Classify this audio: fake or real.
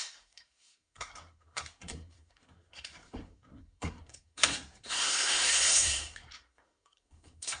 fake